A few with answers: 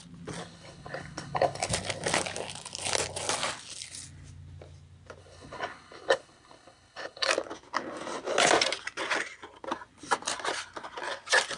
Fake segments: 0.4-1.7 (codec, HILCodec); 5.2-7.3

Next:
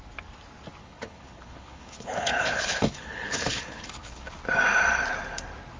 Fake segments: 0.8-4.3 (codec, HILCodec)

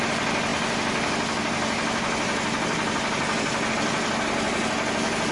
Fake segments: none